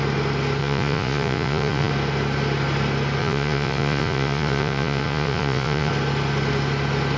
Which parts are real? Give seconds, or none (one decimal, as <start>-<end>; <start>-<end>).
0.0-0.6; 1.9-3.2; 5.9-7.2

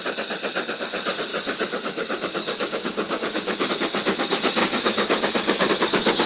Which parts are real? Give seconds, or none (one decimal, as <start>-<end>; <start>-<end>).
0.0-1.3; 3.7-4.6; 5.7-6.3

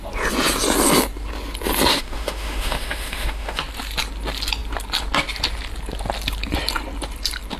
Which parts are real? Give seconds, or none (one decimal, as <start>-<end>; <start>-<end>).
0.0-1.9; 3.6-7.6